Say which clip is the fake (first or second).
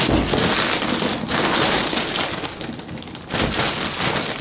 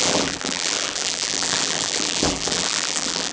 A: second